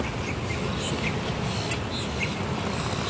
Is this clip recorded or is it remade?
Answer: recorded